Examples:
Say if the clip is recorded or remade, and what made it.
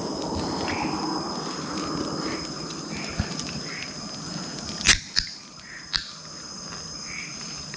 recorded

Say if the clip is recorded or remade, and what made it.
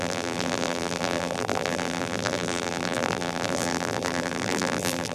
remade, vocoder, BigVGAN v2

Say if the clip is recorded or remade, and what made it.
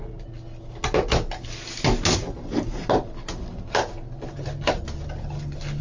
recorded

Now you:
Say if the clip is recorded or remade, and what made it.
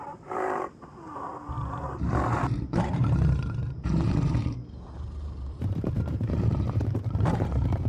remade, vocoder, BigVGAN v2